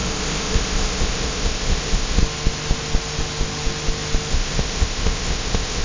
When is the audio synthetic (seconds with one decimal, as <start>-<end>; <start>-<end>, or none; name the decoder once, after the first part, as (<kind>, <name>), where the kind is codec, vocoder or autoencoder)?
0.0-2.2 (codec, ZipCodec); 4.3-5.8